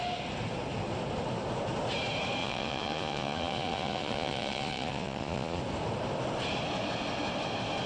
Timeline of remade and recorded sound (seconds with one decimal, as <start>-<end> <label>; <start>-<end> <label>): 0.0-2.4 recorded; 2.4-5.6 remade; 5.6-7.9 recorded